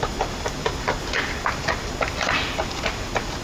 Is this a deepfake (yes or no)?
no